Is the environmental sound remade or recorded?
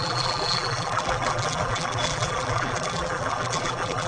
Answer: remade